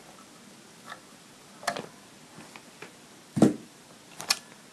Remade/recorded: recorded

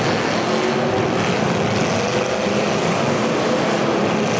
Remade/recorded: recorded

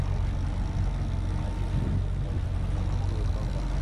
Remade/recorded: recorded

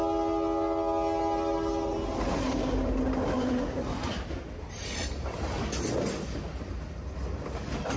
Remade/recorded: recorded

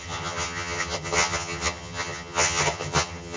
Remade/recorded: remade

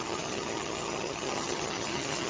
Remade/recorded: remade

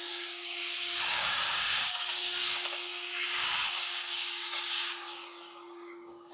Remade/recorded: remade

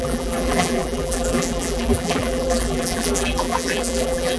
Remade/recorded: remade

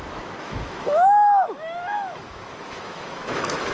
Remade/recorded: remade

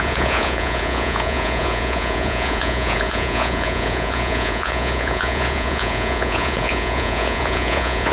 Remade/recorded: remade